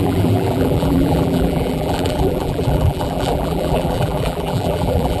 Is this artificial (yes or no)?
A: yes